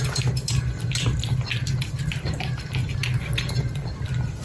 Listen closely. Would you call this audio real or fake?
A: real